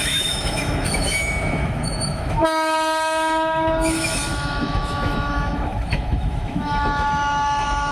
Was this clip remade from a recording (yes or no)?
yes